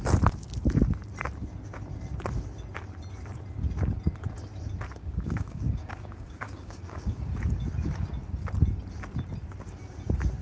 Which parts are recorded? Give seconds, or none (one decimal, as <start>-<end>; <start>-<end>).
0.0-5.0; 7.3-10.4